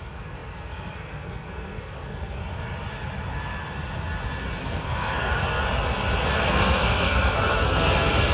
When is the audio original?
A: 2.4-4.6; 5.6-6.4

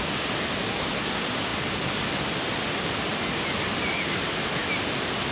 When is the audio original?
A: 0.0-5.3

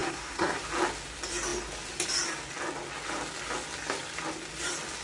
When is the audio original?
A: 0.6-5.0

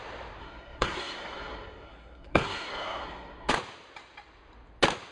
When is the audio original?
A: 0.0-0.4; 3.5-5.1

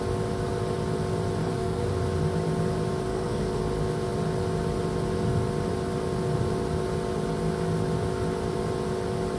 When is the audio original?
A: 0.0-1.4; 1.9-3.1; 3.6-9.4